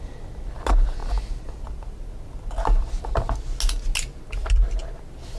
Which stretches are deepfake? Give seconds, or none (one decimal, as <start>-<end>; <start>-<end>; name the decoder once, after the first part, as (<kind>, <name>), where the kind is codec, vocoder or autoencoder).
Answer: none